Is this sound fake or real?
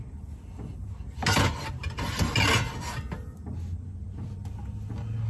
real